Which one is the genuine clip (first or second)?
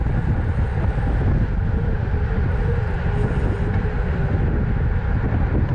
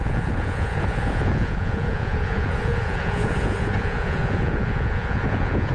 first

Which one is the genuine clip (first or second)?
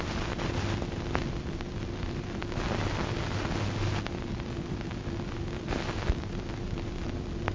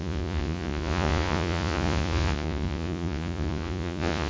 first